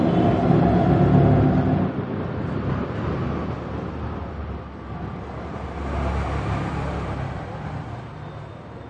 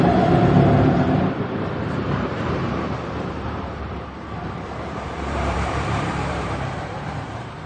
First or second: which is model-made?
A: second